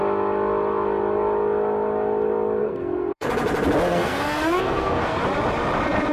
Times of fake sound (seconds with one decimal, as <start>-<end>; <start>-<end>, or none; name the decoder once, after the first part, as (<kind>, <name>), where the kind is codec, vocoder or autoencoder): 2.6-3.3 (codec, SNAC); 3.9-5.2